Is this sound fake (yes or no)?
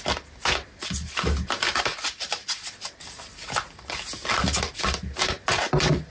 no